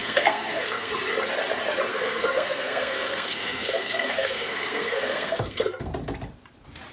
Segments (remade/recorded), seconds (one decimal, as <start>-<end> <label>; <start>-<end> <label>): 0.0-0.9 remade; 0.9-1.9 recorded; 1.9-5.9 remade; 5.9-6.9 recorded